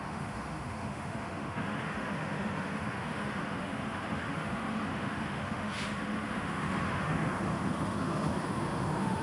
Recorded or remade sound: remade